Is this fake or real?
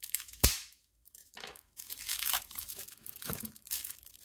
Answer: fake